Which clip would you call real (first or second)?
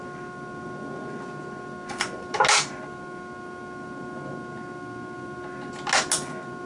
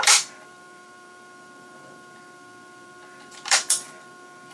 first